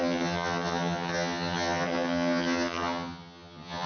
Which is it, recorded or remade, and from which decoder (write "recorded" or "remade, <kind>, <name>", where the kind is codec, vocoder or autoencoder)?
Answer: remade, vocoder, HiFi-GAN